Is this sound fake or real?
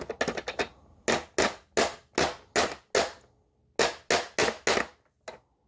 real